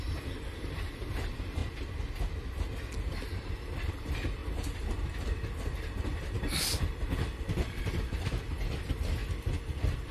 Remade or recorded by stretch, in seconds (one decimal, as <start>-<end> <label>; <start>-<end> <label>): 0.0-1.6 remade; 1.6-3.9 recorded; 3.9-4.4 remade; 4.4-7.8 recorded; 7.8-9.2 remade; 9.2-10.1 recorded